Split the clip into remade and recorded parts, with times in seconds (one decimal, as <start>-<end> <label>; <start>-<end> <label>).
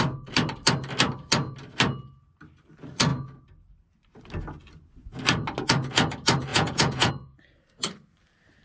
0.0-6.5 recorded; 6.5-7.1 remade; 7.1-8.6 recorded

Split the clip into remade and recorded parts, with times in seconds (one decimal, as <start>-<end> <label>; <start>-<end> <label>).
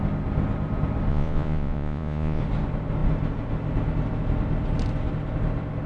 0.0-1.1 recorded; 1.1-2.4 remade; 2.4-5.9 recorded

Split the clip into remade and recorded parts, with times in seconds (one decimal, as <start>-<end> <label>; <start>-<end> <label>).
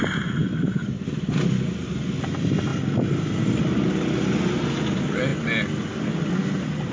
0.0-6.9 recorded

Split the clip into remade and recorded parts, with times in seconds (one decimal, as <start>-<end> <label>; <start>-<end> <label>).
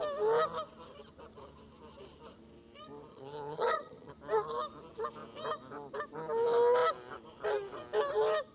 0.0-3.1 recorded; 3.1-4.1 remade; 4.1-8.5 recorded